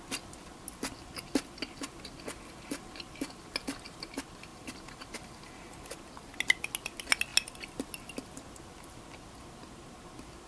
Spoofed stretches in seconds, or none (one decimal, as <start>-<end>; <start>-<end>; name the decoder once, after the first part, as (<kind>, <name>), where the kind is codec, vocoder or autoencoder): 4.5-6.1 (vocoder, BigVGAN v2)